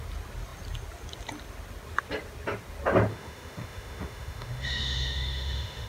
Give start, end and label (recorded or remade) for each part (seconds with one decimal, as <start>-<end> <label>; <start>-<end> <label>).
0.0-3.1 recorded; 3.1-5.9 remade